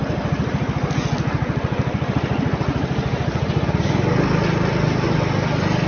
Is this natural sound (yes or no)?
yes